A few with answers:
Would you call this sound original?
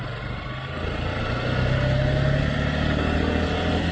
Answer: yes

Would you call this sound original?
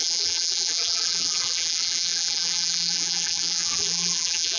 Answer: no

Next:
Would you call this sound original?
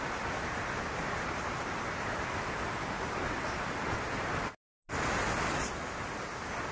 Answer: yes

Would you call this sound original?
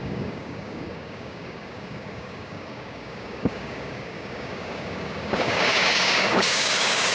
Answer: no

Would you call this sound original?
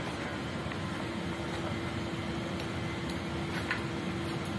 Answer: yes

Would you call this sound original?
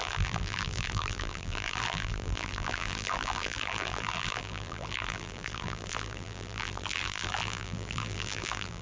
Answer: no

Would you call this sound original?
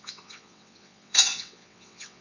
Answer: no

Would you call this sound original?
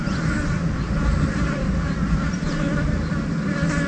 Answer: yes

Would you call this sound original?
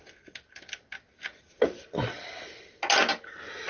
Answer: yes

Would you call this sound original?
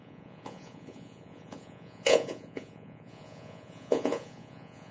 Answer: no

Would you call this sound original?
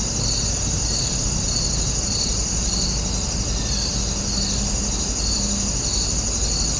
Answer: yes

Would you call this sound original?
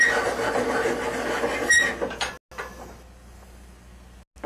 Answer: yes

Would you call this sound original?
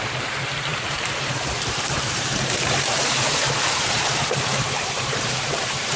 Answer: no